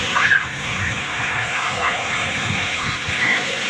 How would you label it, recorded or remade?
remade